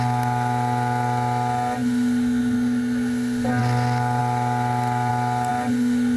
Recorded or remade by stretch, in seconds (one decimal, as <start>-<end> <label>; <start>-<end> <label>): 0.0-6.2 recorded